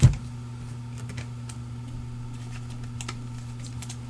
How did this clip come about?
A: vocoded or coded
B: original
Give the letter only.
B